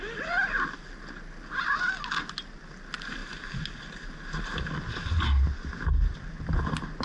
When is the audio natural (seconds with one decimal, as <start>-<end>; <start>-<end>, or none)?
0.0-7.0

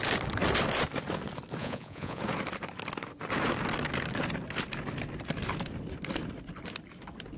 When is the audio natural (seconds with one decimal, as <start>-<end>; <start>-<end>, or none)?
0.0-1.6; 2.2-7.4

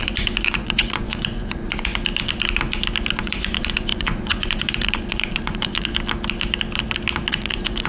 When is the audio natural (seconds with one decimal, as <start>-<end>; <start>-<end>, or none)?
1.9-3.2; 5.9-7.3

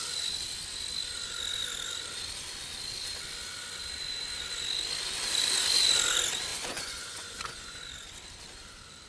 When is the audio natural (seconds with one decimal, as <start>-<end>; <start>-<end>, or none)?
0.0-6.5; 7.8-9.1

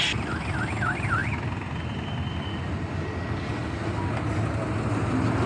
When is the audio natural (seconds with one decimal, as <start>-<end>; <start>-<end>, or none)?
0.0-5.5

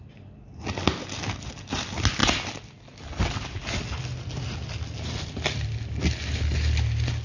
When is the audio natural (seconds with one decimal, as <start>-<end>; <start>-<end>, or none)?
0.0-7.2

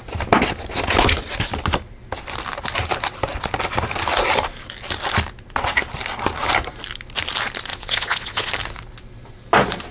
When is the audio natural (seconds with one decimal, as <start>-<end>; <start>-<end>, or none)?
0.0-7.7; 8.5-9.9